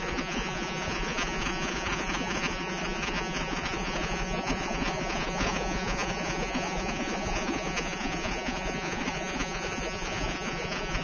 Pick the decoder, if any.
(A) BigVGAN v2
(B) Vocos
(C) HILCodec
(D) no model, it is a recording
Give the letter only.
B